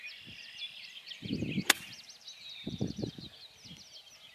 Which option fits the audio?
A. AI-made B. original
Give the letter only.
B